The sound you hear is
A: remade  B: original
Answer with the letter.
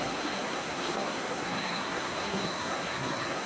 A